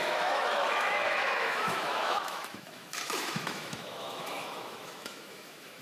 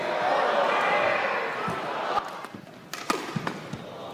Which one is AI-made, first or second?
first